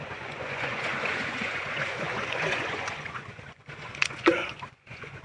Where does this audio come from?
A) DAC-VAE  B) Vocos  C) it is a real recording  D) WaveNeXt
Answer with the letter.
B